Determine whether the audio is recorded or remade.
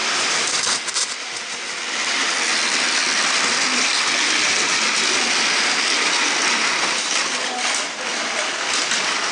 recorded